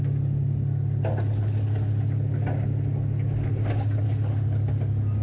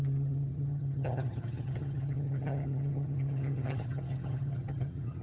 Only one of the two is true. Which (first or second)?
first